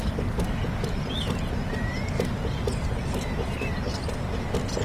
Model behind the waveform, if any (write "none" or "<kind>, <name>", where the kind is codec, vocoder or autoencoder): none